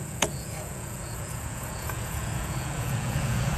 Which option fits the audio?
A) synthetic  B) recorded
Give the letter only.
A